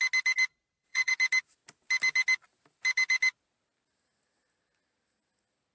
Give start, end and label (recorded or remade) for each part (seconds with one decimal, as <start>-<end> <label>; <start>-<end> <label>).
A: 0.0-0.5 recorded; 0.5-1.1 remade; 1.1-5.7 recorded

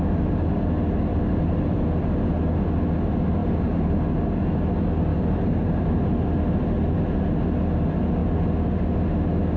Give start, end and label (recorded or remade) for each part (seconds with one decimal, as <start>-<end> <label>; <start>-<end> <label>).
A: 0.0-1.1 recorded; 1.1-1.8 remade; 1.8-3.4 recorded; 3.4-4.0 remade; 4.0-5.1 recorded; 5.1-6.1 remade; 6.1-9.6 recorded